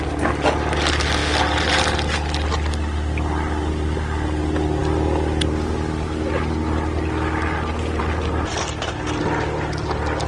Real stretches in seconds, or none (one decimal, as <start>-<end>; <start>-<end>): 0.0-10.3